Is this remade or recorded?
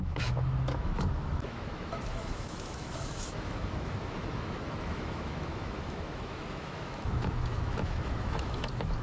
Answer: remade